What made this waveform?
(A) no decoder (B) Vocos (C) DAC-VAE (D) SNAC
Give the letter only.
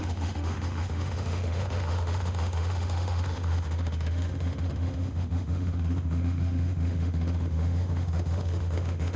C